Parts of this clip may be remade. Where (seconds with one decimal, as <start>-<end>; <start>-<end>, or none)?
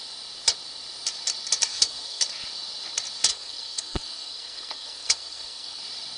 1.7-2.2; 3.3-5.8